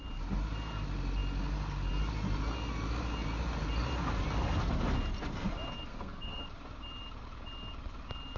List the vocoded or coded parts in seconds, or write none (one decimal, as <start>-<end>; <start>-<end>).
5.9-6.4